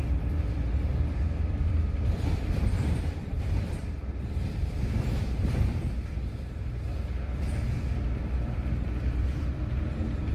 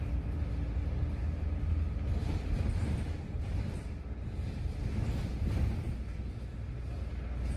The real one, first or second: second